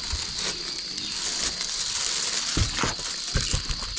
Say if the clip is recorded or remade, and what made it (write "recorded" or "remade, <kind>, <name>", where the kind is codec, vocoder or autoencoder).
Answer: recorded